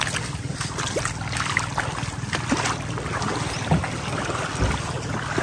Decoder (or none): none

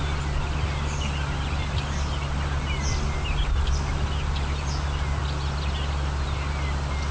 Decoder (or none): none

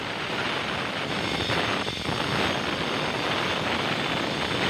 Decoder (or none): none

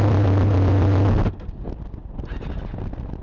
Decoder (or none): none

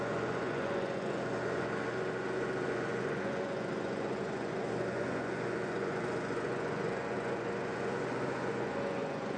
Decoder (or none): vocoder, Vocos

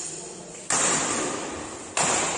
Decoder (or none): none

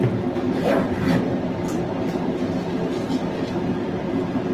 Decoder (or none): vocoder, BigVGAN v2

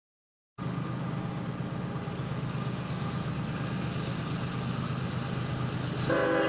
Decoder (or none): none